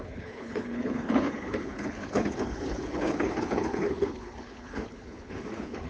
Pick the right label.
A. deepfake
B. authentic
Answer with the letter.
A